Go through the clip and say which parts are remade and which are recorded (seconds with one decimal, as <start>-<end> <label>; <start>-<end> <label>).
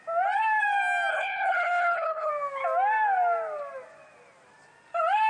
0.0-1.1 recorded; 1.1-2.3 remade; 2.3-5.3 recorded